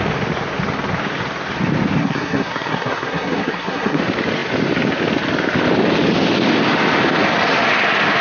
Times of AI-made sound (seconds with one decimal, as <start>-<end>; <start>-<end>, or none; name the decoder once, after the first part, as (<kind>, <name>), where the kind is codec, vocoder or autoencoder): 2.0-4.0 (codec, SNAC)